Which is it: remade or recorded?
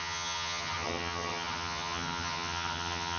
remade